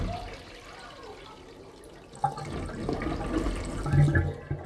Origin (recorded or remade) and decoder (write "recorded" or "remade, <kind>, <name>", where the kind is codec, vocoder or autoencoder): recorded